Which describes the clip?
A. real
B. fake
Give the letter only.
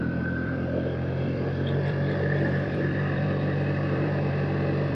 B